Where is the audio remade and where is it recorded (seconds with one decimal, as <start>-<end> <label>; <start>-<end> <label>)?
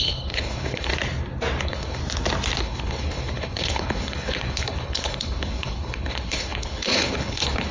0.0-0.9 remade; 0.9-1.6 recorded; 1.6-2.0 remade; 2.0-2.6 recorded; 2.6-7.7 remade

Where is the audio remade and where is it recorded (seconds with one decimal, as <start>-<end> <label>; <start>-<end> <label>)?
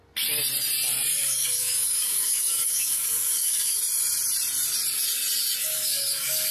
0.0-1.2 recorded; 1.2-3.8 remade; 3.8-5.6 recorded; 5.6-6.5 remade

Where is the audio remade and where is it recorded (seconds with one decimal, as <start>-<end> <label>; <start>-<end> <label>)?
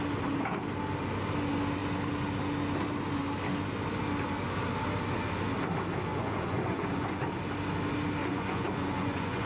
0.0-6.1 recorded; 6.1-7.2 remade; 7.2-8.2 recorded; 8.2-9.5 remade